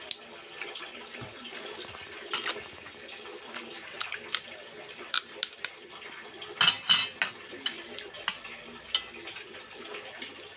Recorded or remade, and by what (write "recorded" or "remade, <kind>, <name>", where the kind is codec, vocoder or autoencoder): recorded